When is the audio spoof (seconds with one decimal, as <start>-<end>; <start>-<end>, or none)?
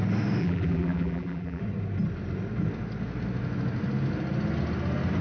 0.4-1.6